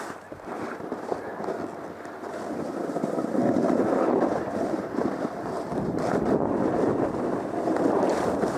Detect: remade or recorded remade